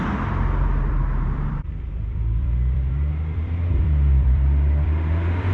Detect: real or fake fake